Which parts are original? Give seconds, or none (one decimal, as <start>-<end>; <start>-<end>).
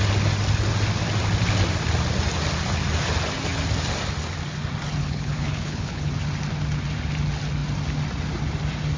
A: 0.0-5.0; 6.1-9.0